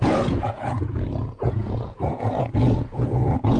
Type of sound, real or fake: fake